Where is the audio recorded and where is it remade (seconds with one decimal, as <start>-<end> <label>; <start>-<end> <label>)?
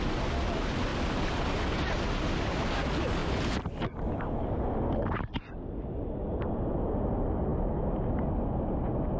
0.0-3.2 recorded; 3.2-4.7 remade; 4.7-9.2 recorded